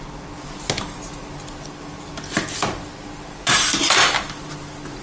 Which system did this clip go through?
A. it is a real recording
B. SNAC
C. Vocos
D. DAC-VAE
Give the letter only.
A